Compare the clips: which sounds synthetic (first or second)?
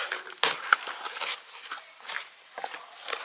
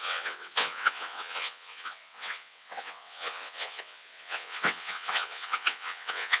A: second